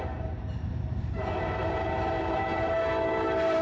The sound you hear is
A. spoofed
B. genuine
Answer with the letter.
A